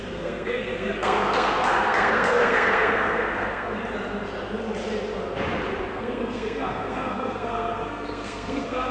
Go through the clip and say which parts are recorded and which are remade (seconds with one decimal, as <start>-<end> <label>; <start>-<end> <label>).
0.0-3.8 remade; 3.8-5.9 recorded; 5.9-8.9 remade